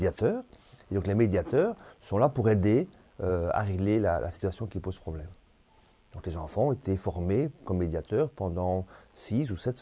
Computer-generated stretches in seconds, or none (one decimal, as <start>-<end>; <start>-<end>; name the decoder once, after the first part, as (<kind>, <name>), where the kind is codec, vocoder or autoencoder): 3.3-6.0 (vocoder, BigVGAN v2)